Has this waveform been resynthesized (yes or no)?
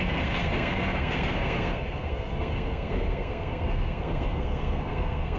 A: yes